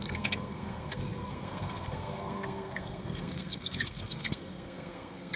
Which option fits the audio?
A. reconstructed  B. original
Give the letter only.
A